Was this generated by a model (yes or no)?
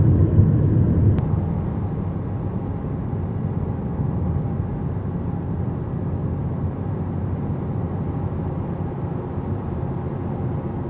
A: no